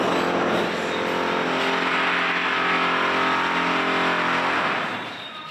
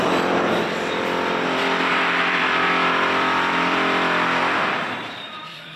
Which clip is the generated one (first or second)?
second